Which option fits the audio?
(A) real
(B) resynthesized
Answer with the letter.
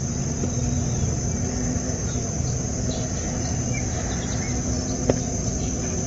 A